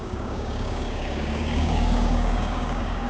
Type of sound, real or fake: fake